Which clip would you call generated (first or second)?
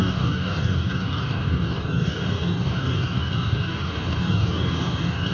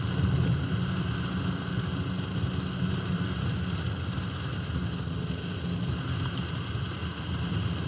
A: first